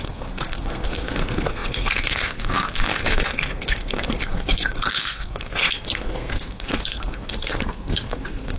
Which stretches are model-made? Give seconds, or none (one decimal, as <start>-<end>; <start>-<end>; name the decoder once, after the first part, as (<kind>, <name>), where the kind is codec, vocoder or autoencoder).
0.0-8.6 (codec, SNAC)